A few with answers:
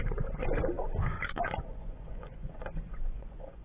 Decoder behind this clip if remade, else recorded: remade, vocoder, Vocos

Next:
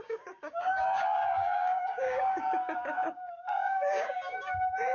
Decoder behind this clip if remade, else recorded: remade, codec, DAC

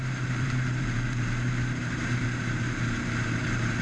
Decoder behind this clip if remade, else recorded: remade, vocoder, BigVGAN v2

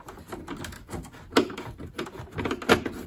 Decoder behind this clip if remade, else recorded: recorded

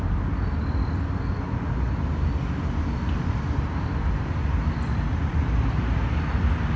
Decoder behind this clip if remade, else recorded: recorded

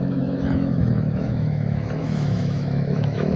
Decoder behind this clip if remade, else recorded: remade, autoencoder, DAC-VAE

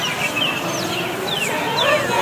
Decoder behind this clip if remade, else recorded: recorded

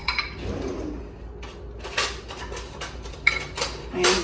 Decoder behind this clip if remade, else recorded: recorded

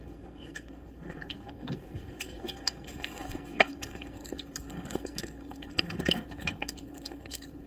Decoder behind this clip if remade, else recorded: remade, codec, SNAC